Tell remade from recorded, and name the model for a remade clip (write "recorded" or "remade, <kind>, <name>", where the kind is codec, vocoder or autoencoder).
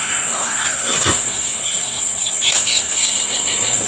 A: remade, codec, SNAC